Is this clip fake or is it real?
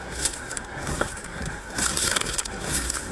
fake